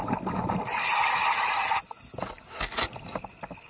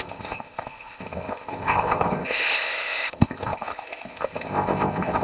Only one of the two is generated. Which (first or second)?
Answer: second